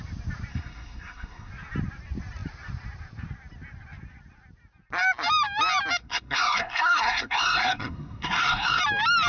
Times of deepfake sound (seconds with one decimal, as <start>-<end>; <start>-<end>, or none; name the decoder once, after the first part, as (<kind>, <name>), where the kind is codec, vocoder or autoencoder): 0.5-1.5 (codec, SNAC); 6.0-8.8